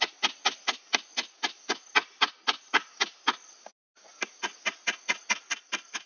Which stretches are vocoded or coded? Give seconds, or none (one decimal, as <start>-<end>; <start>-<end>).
none